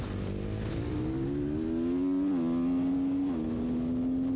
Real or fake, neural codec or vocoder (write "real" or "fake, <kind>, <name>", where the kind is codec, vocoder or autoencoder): real